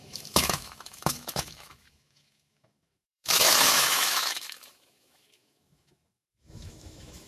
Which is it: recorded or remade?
remade